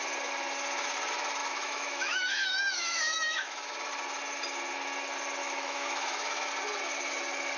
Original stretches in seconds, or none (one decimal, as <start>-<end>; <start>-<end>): 0.0-1.4; 3.9-5.4; 6.5-7.6